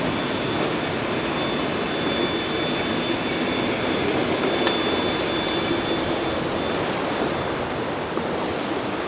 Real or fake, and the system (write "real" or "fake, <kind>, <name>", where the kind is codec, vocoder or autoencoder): real